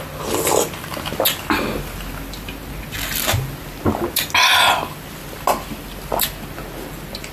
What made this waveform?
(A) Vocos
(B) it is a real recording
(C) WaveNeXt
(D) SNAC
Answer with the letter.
B